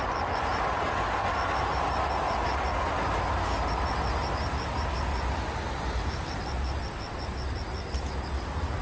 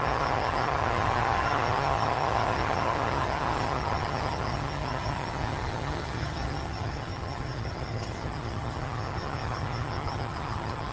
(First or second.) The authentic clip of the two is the first